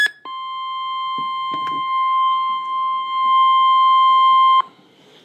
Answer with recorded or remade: recorded